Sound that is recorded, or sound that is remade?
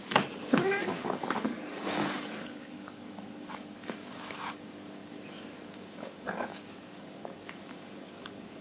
remade